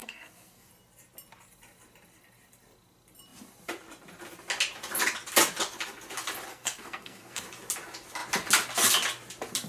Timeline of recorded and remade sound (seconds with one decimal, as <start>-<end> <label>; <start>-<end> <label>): 0.0-0.7 remade; 0.7-6.5 recorded; 6.5-7.4 remade; 7.4-9.7 recorded